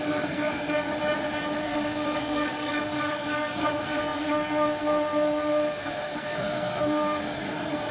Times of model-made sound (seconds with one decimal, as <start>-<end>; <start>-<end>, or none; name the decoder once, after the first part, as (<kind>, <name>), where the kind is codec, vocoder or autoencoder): 0.0-0.9 (codec, SNAC); 1.6-7.9